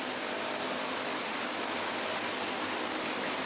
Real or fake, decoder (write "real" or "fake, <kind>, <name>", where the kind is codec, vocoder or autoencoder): real